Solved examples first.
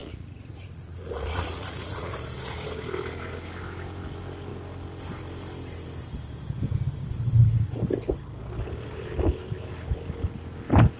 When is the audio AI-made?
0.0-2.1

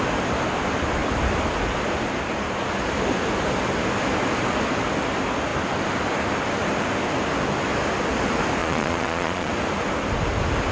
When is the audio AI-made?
8.6-9.5

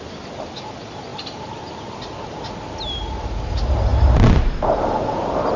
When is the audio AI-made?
none

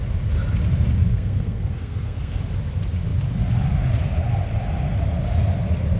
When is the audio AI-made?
1.1-2.4